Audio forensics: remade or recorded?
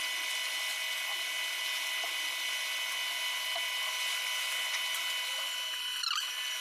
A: recorded